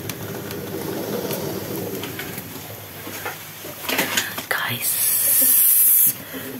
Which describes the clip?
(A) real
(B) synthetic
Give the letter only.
B